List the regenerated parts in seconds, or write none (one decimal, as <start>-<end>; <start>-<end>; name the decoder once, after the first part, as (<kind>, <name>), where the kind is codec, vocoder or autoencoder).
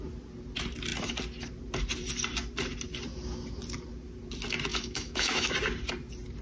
4.7-5.5 (autoencoder, DAC-VAE)